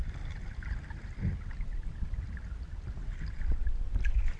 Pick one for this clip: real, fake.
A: real